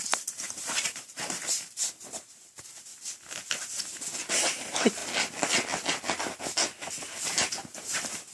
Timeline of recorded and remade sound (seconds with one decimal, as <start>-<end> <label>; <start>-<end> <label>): 0.0-2.9 remade; 2.9-4.3 recorded; 4.3-5.0 remade; 5.0-7.3 recorded; 7.3-8.3 remade